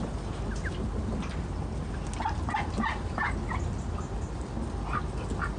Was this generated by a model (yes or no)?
no